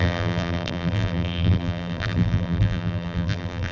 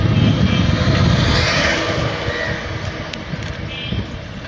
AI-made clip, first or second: first